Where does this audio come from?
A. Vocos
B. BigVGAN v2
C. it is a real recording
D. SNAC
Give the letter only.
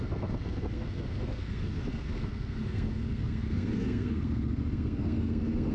D